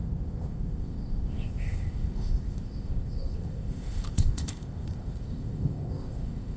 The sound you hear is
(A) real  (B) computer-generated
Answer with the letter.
B